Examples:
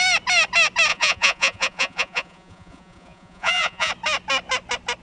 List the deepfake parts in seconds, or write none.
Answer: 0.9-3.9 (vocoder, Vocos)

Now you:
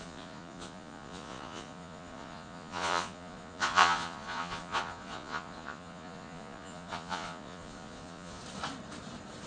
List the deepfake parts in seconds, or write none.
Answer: 0.0-8.4 (vocoder, Vocos)

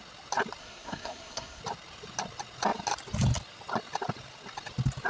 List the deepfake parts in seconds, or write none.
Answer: 0.6-1.6 (codec, SNAC)

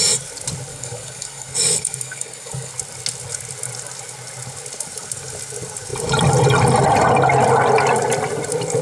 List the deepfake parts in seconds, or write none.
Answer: 0.7-2.7 (codec, DAC)

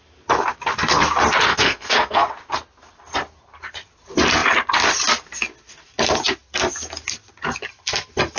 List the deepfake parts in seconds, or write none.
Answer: 1.5-2.3 (codec, SNAC)